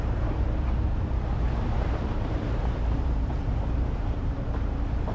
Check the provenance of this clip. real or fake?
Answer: fake